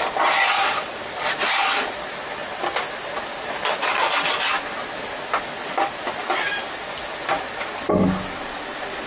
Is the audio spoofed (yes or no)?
no